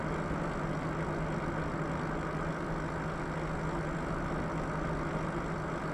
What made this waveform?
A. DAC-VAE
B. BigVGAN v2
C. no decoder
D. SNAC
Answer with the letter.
C